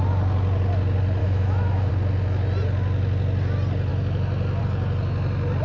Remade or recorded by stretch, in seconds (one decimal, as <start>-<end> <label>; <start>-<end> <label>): 0.0-1.2 recorded; 1.2-1.9 remade; 1.9-5.6 recorded